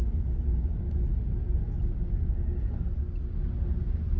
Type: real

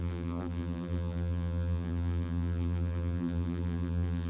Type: fake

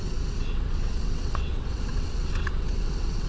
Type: fake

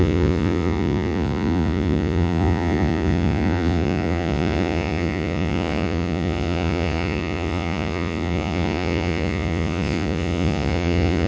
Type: fake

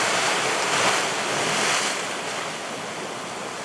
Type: real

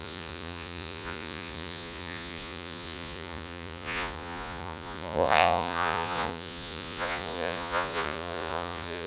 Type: fake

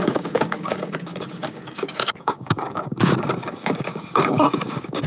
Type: fake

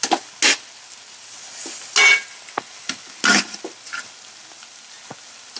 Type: real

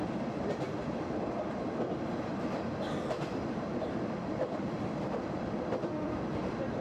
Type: fake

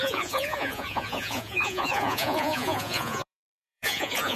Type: fake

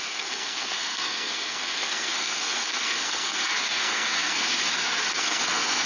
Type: fake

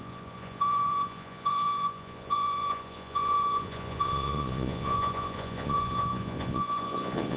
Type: fake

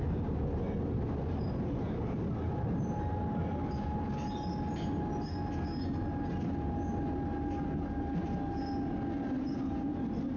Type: real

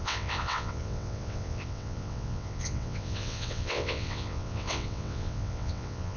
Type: fake